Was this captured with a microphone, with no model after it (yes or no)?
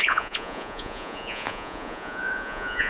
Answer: no